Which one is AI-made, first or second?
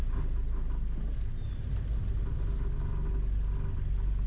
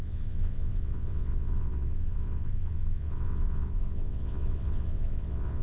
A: second